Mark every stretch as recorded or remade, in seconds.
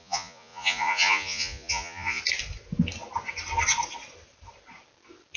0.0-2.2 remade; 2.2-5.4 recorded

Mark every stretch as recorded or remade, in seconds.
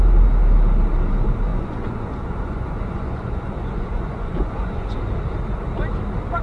0.0-1.5 recorded; 1.5-5.0 remade; 5.0-6.4 recorded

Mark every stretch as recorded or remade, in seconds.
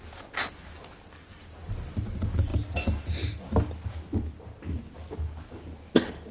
0.0-6.3 recorded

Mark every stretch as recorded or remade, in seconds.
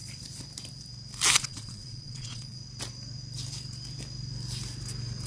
0.0-1.4 recorded; 1.4-2.6 remade; 2.6-5.3 recorded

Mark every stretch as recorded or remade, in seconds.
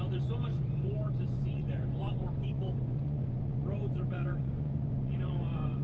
0.0-5.8 remade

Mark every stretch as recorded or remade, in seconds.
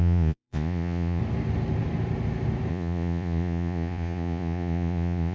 0.0-1.2 remade; 1.2-2.7 recorded; 2.7-5.3 remade